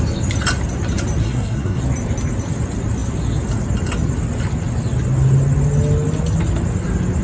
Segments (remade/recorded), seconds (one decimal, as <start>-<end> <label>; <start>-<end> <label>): 0.0-1.2 recorded; 1.2-1.8 remade; 1.8-7.2 recorded